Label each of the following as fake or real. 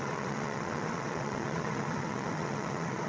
fake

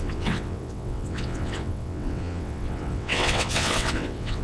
fake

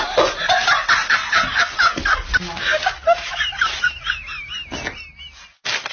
real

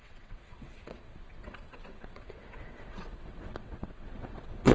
fake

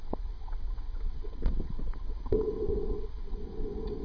fake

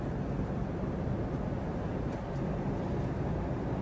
real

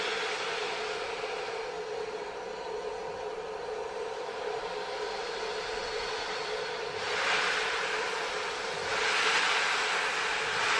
real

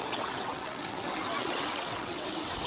fake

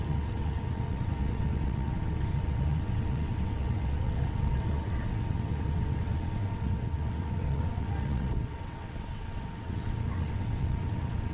fake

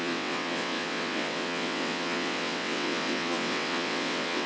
fake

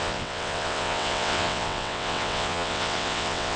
fake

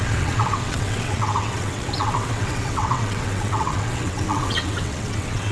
fake